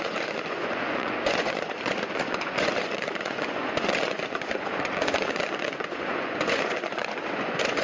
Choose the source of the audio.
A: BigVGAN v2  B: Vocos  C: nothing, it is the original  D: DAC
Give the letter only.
B